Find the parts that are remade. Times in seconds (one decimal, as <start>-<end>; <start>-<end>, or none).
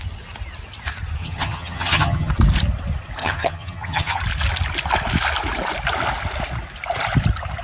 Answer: 1.2-2.3; 3.2-4.2